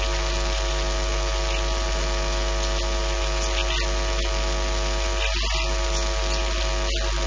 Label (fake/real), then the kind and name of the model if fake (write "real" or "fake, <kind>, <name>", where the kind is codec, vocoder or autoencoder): real